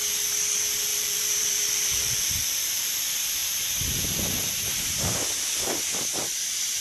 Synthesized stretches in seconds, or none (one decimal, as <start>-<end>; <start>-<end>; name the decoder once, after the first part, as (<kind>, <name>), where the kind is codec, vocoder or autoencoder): 0.9-2.9 (vocoder, BigVGAN v2)